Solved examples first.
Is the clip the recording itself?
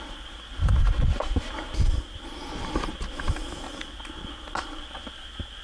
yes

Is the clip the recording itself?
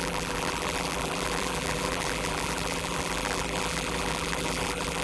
no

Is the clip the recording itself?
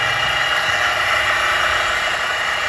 yes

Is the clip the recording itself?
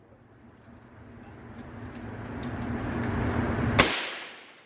yes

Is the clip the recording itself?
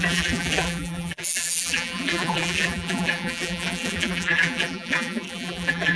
no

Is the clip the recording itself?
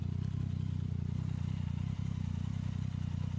yes